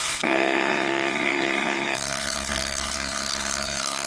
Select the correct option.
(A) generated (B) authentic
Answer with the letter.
A